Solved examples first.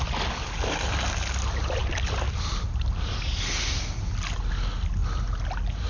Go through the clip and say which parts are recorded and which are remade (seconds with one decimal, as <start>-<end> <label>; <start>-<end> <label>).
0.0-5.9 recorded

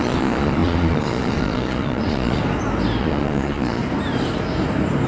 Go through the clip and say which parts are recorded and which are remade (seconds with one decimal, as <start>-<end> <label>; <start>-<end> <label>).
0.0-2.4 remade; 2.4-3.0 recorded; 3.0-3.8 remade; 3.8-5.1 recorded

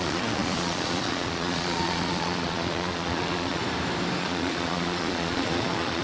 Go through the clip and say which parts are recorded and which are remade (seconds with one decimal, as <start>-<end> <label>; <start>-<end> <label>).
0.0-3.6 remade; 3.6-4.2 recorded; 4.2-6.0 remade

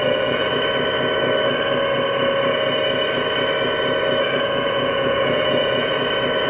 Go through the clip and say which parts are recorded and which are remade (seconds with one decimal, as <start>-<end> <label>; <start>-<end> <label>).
0.0-0.5 remade; 0.5-4.4 recorded; 4.4-5.9 remade; 5.9-6.5 recorded

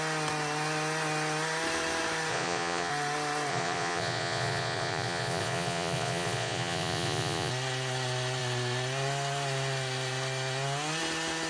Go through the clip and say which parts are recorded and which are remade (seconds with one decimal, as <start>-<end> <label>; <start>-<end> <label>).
0.0-2.3 recorded; 2.3-2.9 remade; 2.9-3.5 recorded; 3.5-7.5 remade; 7.5-11.5 recorded